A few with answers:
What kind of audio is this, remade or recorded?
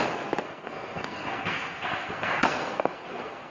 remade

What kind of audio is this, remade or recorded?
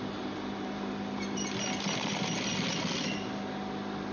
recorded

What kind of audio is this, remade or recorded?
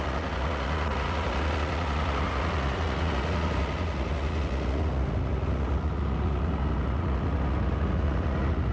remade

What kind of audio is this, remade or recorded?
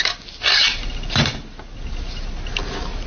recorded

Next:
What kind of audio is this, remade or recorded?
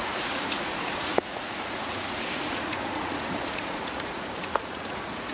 remade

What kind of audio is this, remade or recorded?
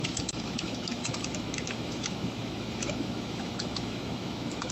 remade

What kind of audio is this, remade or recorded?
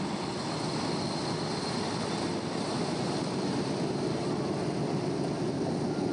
recorded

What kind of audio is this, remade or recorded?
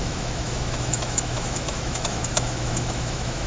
remade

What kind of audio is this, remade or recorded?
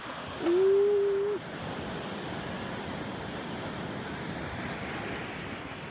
recorded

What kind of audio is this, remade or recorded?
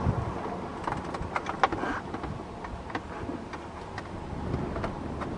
recorded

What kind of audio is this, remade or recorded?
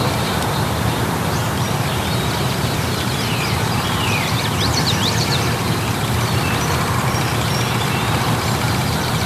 remade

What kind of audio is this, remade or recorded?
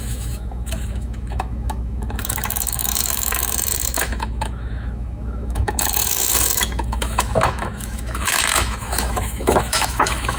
remade